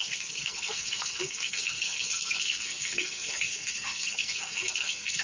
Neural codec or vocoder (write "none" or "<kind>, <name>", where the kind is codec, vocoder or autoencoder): codec, SNAC